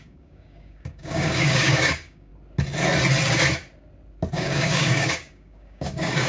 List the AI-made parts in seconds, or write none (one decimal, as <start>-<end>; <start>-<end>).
0.0-2.3; 4.3-6.3